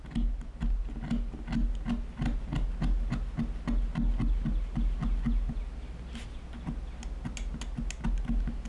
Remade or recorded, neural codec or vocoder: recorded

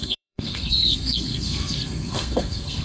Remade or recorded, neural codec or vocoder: remade, codec, SNAC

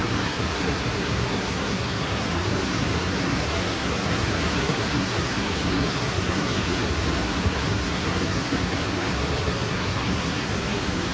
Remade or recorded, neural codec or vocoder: remade, codec, SNAC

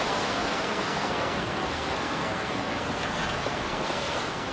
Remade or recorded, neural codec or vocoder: remade, codec, SNAC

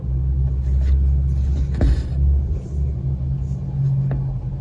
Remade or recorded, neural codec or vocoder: recorded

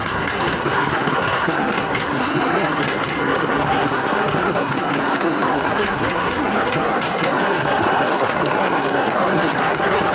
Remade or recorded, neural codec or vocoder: remade, codec, SNAC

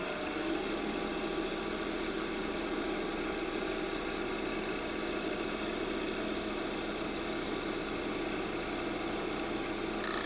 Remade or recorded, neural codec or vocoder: recorded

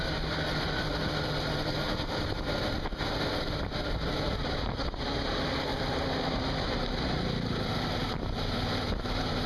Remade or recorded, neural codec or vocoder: recorded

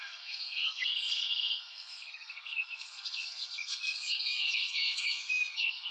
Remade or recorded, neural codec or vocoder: remade, codec, SNAC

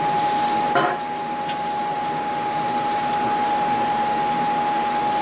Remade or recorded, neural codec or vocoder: recorded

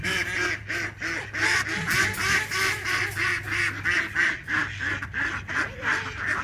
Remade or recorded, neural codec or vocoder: recorded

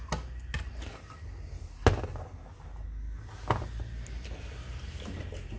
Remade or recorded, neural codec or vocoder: recorded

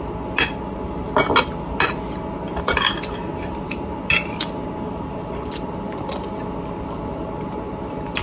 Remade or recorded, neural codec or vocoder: recorded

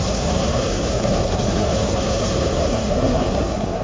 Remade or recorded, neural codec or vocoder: remade, codec, SNAC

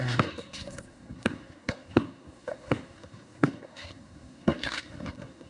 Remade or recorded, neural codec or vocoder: remade, codec, SNAC